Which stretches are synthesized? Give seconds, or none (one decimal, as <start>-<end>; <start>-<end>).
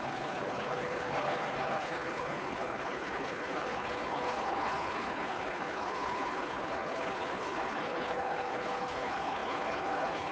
0.0-10.3